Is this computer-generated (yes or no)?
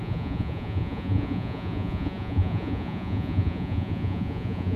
yes